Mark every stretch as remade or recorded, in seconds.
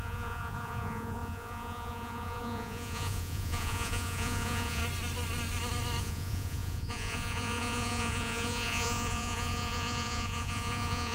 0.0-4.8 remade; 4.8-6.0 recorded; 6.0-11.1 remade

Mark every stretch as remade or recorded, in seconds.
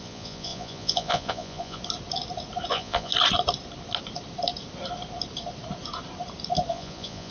0.0-1.8 remade; 1.8-2.7 recorded; 2.7-3.1 remade; 3.1-6.7 recorded; 6.7-7.3 remade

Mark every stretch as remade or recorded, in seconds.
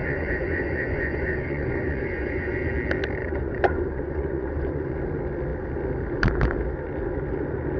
0.0-2.7 remade; 2.7-3.2 recorded; 3.2-5.0 remade; 5.0-7.8 recorded